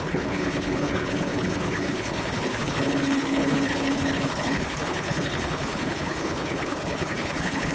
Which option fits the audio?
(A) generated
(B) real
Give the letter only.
A